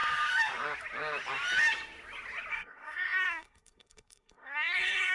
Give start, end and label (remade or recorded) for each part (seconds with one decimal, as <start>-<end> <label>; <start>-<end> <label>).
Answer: 0.0-2.5 recorded; 2.5-5.1 remade